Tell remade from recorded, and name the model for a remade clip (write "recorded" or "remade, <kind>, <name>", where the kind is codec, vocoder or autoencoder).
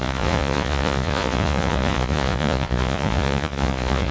remade, vocoder, Vocos